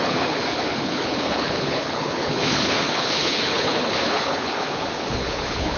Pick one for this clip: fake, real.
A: fake